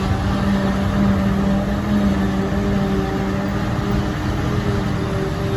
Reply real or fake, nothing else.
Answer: real